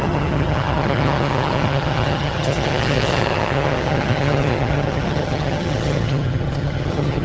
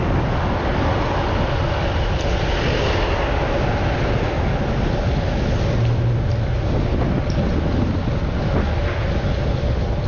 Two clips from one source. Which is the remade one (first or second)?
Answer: first